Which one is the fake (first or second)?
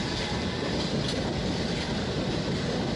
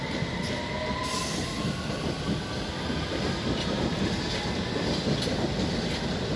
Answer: first